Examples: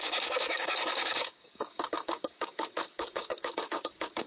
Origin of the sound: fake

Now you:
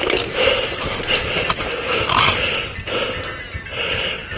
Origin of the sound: real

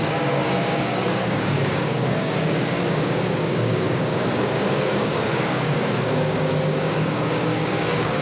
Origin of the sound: fake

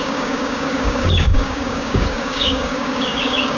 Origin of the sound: fake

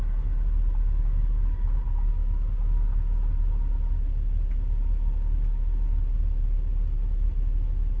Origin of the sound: real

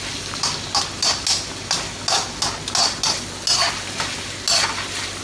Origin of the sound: real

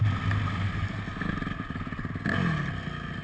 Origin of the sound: real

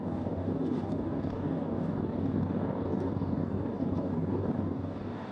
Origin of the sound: fake